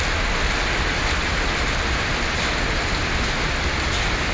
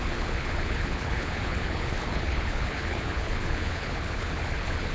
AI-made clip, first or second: second